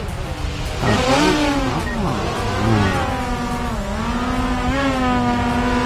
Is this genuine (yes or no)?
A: yes